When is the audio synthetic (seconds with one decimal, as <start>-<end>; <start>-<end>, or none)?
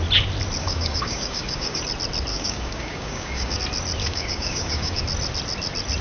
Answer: 0.6-1.8; 2.3-3.6; 4.0-5.0